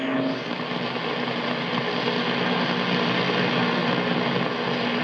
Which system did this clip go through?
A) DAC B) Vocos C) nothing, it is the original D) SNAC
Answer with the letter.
C